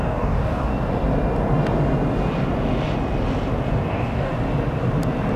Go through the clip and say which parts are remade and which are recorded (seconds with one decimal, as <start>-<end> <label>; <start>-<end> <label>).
0.0-0.7 remade; 0.7-3.9 recorded; 3.9-4.3 remade; 4.3-5.4 recorded